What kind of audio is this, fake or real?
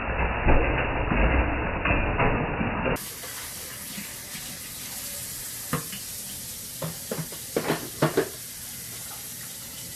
real